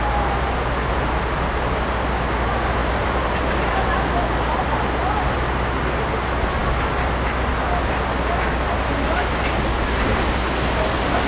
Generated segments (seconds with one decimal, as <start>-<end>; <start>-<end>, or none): none

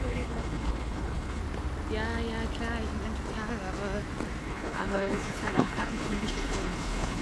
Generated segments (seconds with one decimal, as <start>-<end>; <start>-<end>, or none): 0.0-1.4; 4.4-7.2

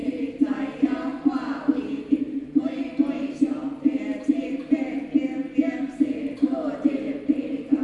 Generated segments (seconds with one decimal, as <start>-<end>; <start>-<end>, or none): none

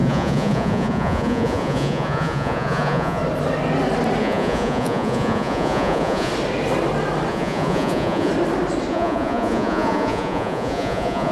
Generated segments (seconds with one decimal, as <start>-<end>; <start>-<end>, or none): 0.0-3.2; 4.2-6.3; 7.3-8.3; 8.9-11.3

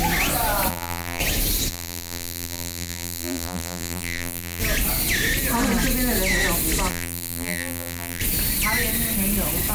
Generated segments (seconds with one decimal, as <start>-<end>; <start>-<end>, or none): 0.7-1.2; 1.7-4.6; 6.9-8.2

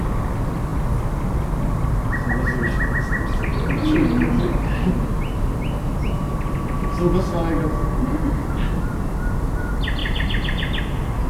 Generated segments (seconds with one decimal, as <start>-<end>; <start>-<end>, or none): 10.0-10.8